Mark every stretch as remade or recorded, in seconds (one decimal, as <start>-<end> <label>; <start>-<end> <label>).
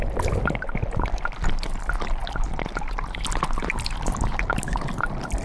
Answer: 0.0-5.4 recorded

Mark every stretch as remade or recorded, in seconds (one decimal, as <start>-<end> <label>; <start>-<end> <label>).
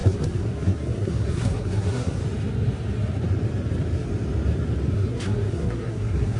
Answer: 0.0-2.2 remade; 2.2-4.9 recorded; 4.9-6.4 remade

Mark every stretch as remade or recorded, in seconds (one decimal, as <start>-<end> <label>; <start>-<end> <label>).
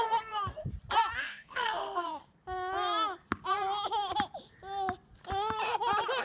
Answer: 0.0-0.6 remade; 0.6-1.2 recorded; 1.2-2.2 remade; 2.2-6.2 recorded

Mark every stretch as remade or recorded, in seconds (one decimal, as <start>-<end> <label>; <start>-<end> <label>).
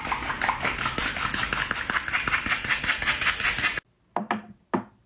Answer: 0.0-5.1 recorded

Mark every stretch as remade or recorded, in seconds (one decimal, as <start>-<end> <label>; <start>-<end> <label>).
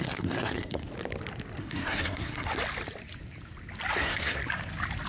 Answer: 0.0-0.9 remade; 0.9-1.6 recorded; 1.6-2.5 remade; 2.5-4.0 recorded; 4.0-4.4 remade; 4.4-5.1 recorded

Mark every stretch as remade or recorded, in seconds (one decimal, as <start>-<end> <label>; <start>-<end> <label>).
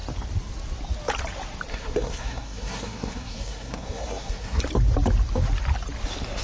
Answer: 0.0-1.7 recorded; 1.7-4.6 remade; 4.6-6.4 recorded